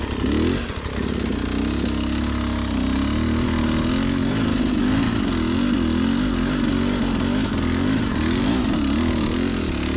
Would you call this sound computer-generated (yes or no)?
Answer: no